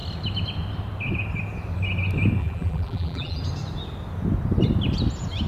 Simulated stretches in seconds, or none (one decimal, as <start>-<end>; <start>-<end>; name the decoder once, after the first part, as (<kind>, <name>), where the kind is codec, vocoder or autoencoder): 2.4-3.4 (vocoder, BigVGAN v2)